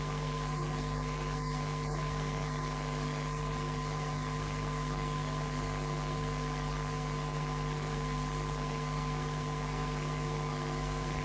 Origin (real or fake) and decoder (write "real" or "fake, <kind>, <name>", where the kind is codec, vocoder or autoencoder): fake, codec, SNAC